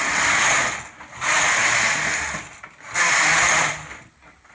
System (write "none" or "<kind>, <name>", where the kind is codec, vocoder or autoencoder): none